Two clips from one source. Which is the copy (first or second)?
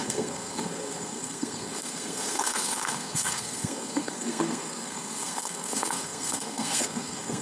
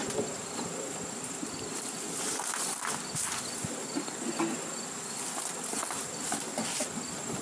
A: first